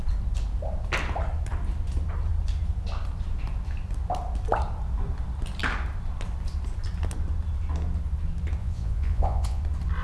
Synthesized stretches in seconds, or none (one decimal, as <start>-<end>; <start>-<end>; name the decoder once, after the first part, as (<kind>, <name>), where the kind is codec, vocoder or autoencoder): 8.6-9.6 (vocoder, Vocos)